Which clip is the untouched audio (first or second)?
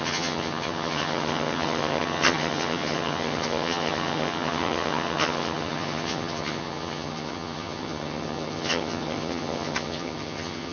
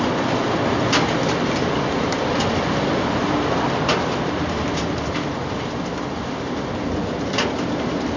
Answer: second